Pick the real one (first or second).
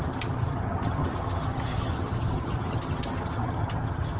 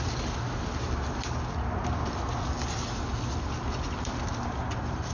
second